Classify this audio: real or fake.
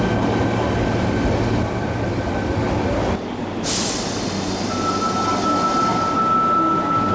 real